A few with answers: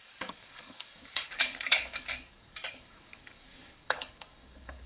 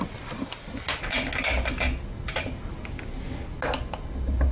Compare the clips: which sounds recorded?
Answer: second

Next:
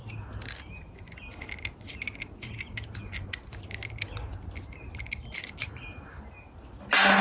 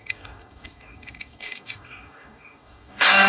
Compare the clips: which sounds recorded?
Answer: first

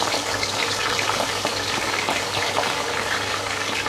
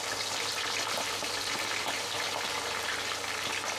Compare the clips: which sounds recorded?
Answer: second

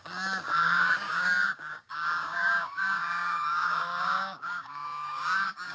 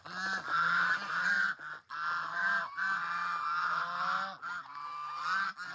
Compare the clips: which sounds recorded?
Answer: second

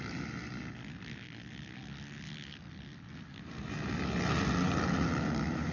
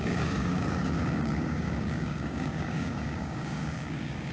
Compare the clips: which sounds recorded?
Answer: first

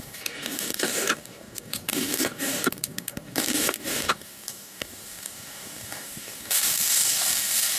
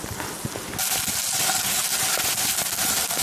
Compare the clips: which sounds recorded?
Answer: second